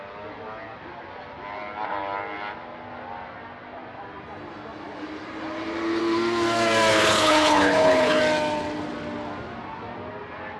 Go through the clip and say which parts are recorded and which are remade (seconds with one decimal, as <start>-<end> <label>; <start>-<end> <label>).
0.0-6.9 recorded; 6.9-8.2 remade; 8.2-10.6 recorded